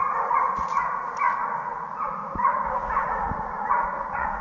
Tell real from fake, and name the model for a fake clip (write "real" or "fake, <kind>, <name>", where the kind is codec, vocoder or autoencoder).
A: fake, vocoder, Vocos